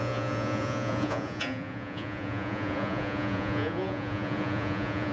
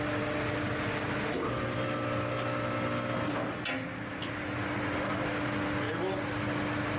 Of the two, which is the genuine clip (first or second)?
second